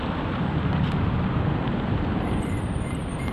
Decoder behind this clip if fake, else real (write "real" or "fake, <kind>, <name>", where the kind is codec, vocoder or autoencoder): fake, vocoder, BigVGAN v2